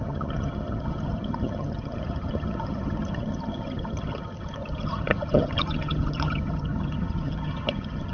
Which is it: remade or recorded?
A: remade